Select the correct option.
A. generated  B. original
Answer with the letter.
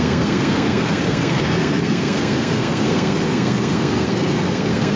A